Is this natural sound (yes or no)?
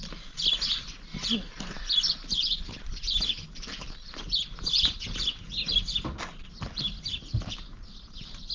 yes